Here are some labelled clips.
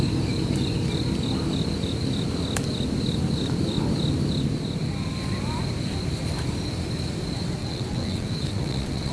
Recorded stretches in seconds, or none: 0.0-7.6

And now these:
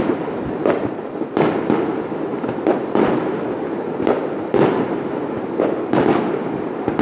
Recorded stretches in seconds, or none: 0.0-7.0

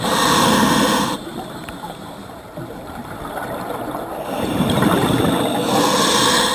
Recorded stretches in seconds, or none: 0.0-1.3; 5.2-6.5

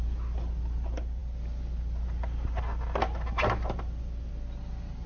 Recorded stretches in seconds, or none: 0.0-5.1

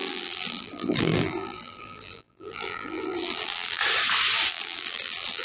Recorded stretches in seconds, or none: 3.8-4.5